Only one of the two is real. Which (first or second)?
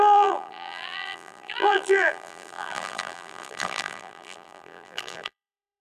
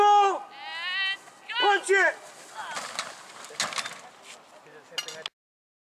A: second